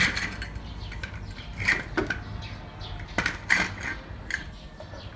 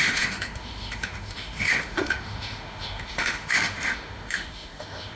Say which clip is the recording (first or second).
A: first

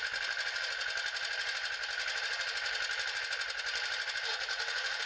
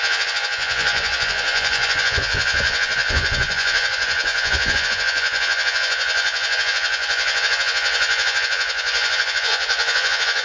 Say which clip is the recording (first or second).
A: first